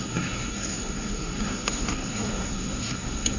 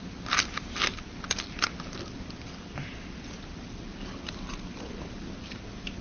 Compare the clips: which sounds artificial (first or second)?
first